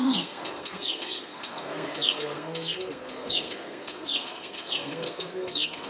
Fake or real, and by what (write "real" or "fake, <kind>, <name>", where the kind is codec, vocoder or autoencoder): fake, codec, SNAC